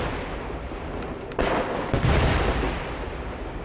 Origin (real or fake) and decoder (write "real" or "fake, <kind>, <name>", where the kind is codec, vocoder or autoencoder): real